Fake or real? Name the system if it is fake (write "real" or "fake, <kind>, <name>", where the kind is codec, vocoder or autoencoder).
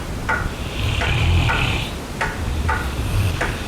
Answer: real